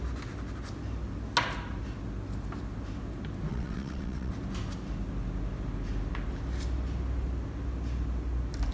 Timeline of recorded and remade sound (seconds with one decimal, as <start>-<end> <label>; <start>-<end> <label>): 0.0-3.5 recorded; 3.5-4.3 remade; 4.3-8.7 recorded